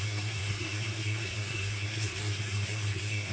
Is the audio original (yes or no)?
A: no